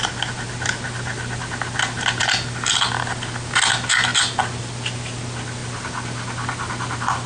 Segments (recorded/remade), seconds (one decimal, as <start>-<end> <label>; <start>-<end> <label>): 0.0-7.3 recorded

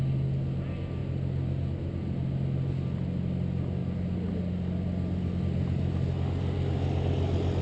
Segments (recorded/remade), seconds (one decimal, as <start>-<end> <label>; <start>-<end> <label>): 0.0-7.6 recorded

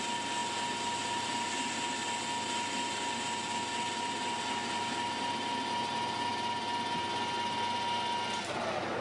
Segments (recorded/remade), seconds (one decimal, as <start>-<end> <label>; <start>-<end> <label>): 0.0-9.0 recorded